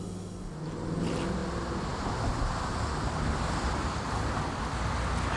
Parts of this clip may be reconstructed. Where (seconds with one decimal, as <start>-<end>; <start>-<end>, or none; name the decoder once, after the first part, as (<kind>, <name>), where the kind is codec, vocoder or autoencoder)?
none